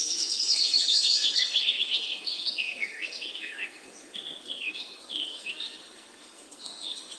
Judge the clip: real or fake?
fake